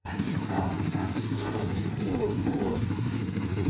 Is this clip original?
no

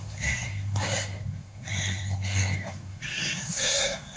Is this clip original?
no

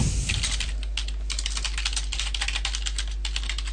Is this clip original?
yes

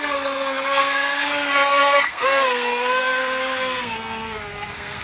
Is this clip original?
no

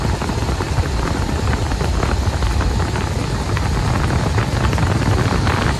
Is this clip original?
yes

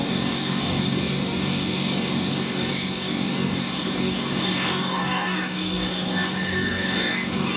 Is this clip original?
no